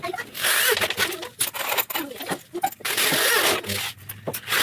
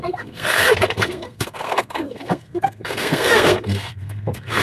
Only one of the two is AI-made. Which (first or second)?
second